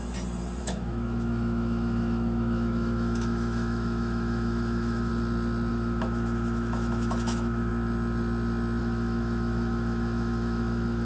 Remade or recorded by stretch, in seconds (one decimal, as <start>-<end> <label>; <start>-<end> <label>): 0.0-0.6 recorded; 0.6-5.1 remade; 5.1-5.7 recorded; 5.7-7.7 remade; 7.7-8.8 recorded; 8.8-11.1 remade